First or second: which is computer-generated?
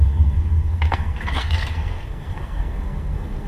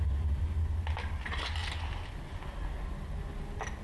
first